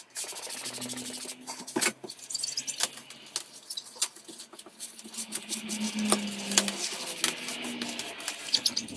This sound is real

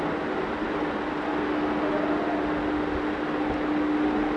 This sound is real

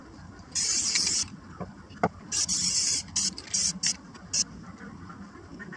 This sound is real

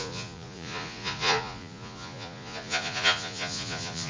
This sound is fake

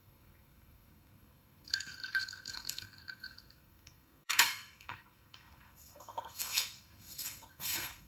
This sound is fake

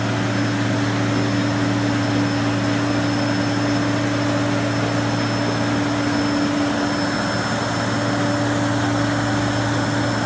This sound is real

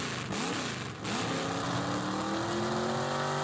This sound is real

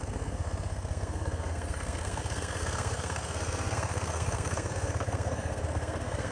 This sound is fake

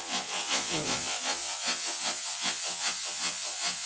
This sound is fake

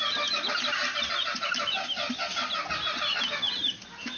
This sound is real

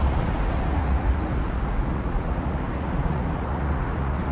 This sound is fake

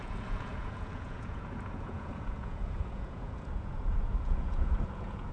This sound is fake